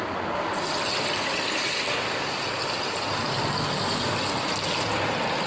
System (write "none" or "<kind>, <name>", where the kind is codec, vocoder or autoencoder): none